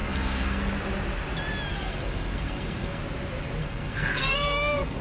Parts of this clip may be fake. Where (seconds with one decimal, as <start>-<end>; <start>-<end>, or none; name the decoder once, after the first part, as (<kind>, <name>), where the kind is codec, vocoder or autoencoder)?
0.0-0.7 (codec, SNAC); 1.7-3.0; 3.6-5.0